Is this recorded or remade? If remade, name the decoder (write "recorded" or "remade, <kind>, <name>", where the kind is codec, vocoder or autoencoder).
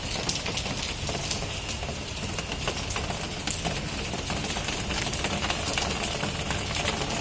recorded